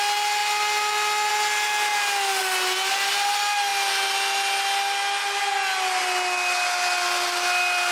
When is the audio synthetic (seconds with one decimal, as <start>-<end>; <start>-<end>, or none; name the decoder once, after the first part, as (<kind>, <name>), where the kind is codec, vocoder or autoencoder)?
none

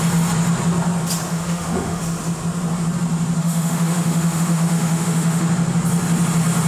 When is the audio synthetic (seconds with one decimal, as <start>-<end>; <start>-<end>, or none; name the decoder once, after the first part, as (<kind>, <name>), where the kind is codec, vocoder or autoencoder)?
1.3-2.0 (autoencoder, DAC-VAE); 3.4-5.5

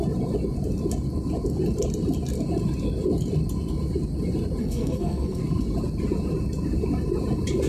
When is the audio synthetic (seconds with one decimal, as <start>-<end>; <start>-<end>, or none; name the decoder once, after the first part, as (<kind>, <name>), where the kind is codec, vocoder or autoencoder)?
4.6-5.4 (codec, SNAC)

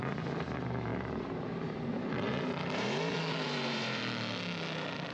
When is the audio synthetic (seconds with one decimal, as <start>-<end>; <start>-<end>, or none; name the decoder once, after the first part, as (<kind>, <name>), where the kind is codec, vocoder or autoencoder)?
0.9-4.0 (vocoder, BigVGAN v2)

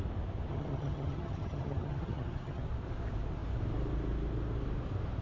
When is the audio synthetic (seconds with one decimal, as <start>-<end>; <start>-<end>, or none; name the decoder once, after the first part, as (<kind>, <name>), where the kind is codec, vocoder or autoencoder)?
0.5-2.6 (vocoder, HiFi-GAN)